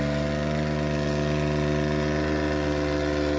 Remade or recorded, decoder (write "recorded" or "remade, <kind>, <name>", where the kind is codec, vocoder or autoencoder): recorded